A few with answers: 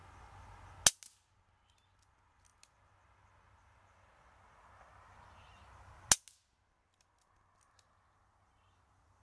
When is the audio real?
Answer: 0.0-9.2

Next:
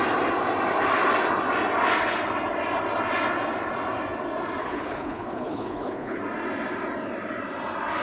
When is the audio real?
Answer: 0.0-4.6; 6.2-8.0

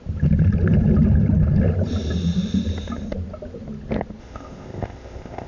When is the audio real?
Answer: 0.0-4.2